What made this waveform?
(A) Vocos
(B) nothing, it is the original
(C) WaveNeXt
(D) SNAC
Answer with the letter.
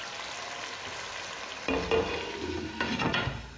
B